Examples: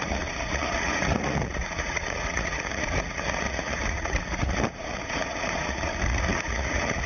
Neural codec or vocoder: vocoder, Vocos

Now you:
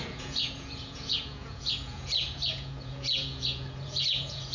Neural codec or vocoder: vocoder, Vocos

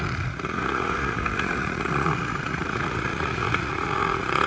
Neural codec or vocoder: vocoder, Vocos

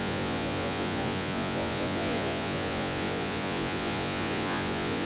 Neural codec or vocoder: vocoder, Vocos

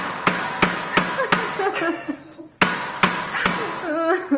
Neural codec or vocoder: none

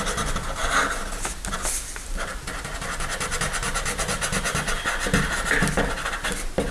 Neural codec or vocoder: none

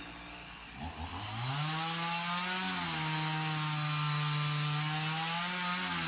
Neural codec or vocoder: none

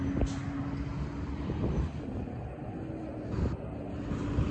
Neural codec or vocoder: none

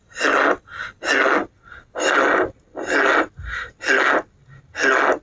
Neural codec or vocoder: none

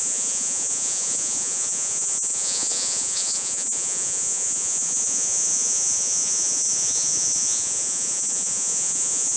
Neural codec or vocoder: vocoder, Vocos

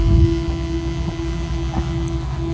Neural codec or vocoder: none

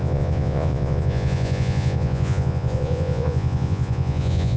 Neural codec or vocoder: vocoder, Vocos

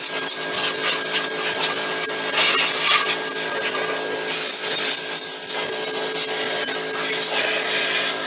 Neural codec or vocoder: none